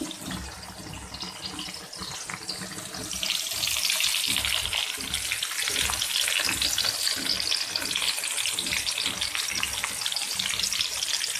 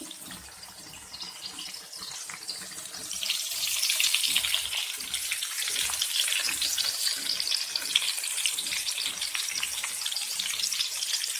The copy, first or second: second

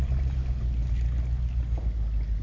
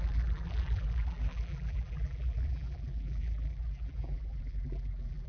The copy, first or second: second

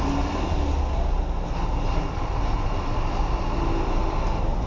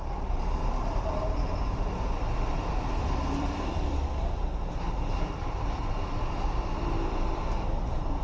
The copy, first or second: second